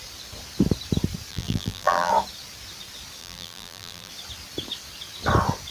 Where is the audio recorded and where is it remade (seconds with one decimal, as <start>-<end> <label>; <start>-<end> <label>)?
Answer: 0.0-1.3 recorded; 1.3-2.1 remade; 2.1-3.2 recorded; 3.2-4.1 remade; 4.1-5.7 recorded